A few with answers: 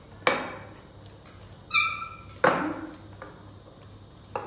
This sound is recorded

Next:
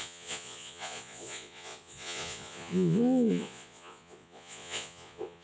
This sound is remade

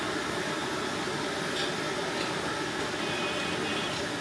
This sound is recorded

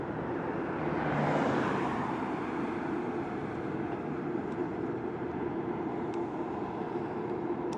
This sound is remade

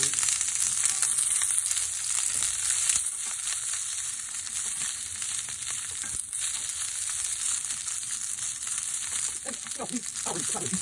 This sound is recorded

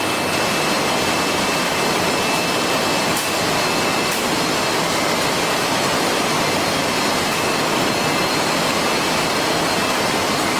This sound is recorded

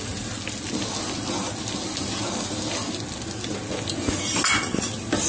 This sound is recorded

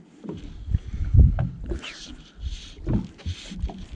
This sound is recorded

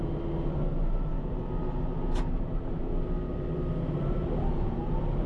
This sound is recorded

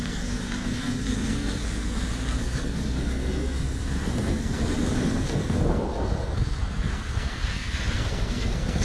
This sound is remade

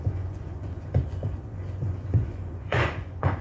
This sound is remade